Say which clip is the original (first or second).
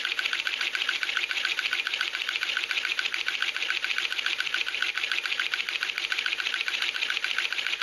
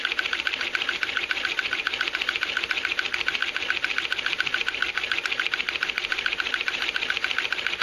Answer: first